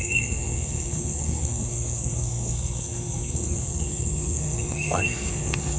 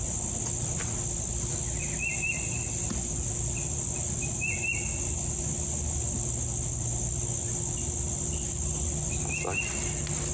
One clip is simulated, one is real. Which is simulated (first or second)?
first